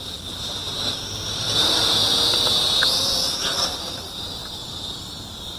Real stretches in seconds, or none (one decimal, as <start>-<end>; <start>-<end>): 0.6-1.3; 2.0-3.8